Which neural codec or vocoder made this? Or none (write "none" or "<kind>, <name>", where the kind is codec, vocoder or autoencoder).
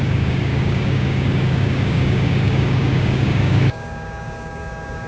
codec, DAC